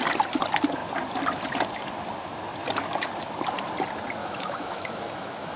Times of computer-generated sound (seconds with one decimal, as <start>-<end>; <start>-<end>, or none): 4.2-5.6